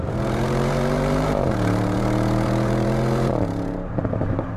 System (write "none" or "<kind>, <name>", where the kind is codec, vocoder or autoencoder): vocoder, BigVGAN v2